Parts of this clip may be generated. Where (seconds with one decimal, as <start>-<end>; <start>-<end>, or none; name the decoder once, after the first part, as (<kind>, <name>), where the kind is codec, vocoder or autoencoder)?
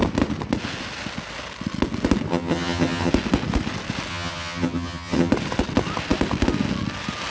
2.3-3.1 (vocoder, HiFi-GAN); 4.1-5.3